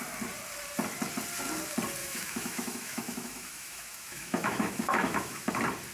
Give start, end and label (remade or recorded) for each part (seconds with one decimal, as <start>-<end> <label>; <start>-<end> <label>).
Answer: 0.0-2.0 recorded; 2.0-5.5 remade; 5.5-5.9 recorded